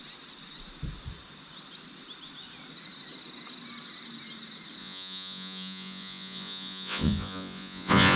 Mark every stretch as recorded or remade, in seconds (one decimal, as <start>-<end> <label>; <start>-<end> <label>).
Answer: 0.0-4.8 recorded; 4.8-8.2 remade